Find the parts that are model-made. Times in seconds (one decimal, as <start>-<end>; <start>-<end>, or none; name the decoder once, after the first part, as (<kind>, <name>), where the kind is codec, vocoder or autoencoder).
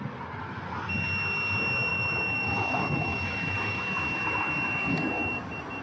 1.9-4.3 (autoencoder, DAC-VAE)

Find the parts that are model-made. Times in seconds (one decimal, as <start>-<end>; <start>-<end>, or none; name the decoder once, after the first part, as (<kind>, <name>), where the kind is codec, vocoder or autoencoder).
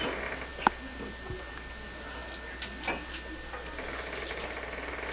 none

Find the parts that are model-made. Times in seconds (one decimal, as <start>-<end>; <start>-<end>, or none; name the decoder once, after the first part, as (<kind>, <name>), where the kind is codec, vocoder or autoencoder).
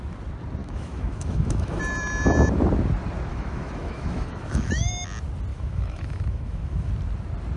0.6-1.8 (autoencoder, DAC-VAE); 3.3-4.9; 5.5-6.9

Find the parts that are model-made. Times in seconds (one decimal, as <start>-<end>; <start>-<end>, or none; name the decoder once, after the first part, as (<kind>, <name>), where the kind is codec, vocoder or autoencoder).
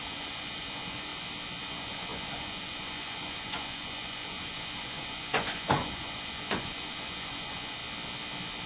0.0-1.1 (vocoder, Vocos); 1.6-7.8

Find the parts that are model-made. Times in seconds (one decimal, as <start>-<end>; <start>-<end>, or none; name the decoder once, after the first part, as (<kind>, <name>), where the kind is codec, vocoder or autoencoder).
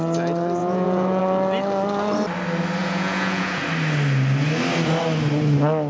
0.6-1.2 (vocoder, Vocos); 2.8-3.6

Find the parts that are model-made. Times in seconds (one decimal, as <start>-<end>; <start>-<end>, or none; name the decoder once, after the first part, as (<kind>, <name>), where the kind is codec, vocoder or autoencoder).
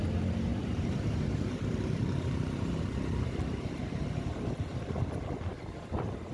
0.5-2.7 (vocoder, BigVGAN v2); 3.8-4.5